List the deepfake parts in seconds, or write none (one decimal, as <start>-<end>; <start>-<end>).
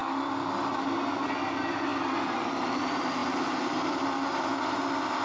none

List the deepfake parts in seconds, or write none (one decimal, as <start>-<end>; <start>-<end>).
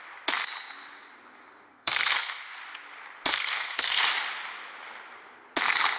1.7-2.4; 3.3-4.0